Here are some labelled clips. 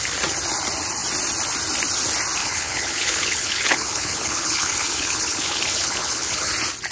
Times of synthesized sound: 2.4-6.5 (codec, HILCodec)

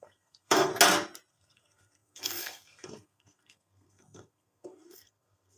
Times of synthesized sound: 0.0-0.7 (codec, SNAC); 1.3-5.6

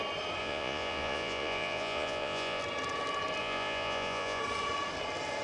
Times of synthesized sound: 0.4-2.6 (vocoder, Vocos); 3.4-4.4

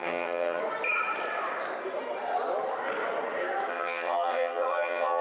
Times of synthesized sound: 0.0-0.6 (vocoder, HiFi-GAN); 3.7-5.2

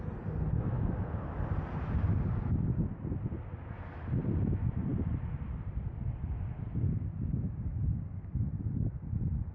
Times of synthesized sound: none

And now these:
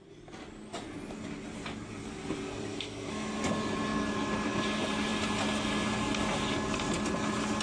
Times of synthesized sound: 2.7-3.3 (autoencoder, DAC-VAE)